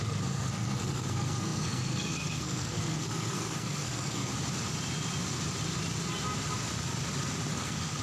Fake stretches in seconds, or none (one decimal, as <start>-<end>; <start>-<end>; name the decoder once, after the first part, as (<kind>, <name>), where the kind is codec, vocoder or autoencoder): 0.0-4.3 (codec, SNAC); 7.5-8.0